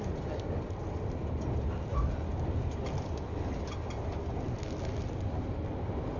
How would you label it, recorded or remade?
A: recorded